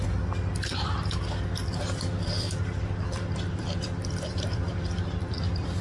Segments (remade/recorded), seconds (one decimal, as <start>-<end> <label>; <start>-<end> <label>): 0.0-0.7 recorded; 0.7-5.8 remade